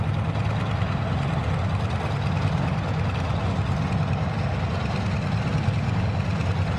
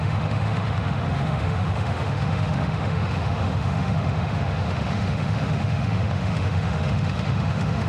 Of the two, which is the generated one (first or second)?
second